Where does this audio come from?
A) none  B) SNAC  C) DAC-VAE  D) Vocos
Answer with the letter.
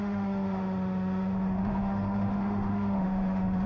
C